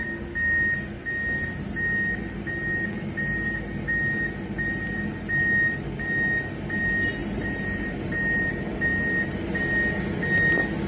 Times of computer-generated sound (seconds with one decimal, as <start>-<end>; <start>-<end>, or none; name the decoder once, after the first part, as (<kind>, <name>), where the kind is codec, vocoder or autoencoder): 7.2-8.5 (vocoder, BigVGAN v2)